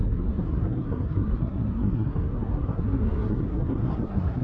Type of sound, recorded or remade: remade